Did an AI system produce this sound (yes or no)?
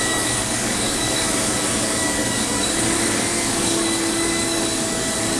yes